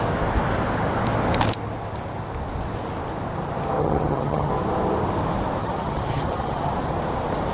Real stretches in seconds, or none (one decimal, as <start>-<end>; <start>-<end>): 0.0-3.8; 4.5-5.6; 6.7-7.5